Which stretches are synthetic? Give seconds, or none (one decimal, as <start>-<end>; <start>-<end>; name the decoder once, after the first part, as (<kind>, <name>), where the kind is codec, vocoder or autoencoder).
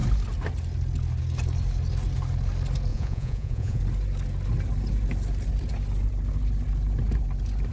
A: 2.9-3.8 (vocoder, Vocos)